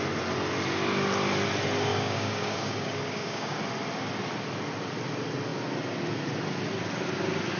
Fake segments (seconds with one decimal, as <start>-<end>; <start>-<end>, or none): 1.9-3.6